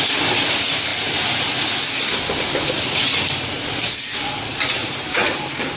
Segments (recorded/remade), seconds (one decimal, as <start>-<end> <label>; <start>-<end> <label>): 0.0-4.8 recorded; 4.8-5.8 remade